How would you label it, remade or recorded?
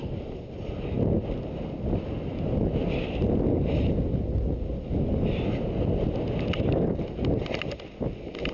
recorded